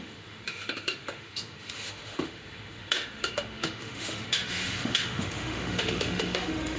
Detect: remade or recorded remade